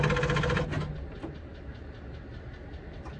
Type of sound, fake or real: real